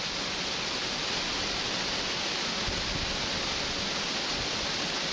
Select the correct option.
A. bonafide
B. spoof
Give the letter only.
A